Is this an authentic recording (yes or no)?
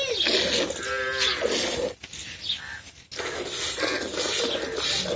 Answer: yes